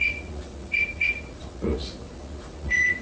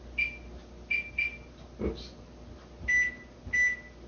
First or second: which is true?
second